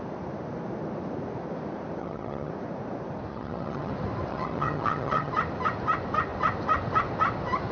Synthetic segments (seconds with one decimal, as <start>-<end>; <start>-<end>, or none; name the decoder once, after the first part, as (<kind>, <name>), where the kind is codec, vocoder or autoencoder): 2.0-2.5 (vocoder, HiFi-GAN); 3.3-3.9; 4.3-5.3